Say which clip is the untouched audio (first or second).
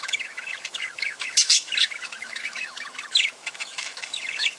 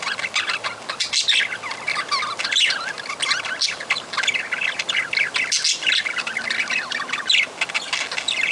second